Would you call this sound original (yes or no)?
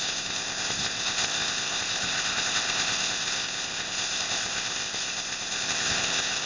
no